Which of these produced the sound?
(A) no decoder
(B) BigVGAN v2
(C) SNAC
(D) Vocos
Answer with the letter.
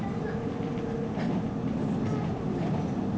B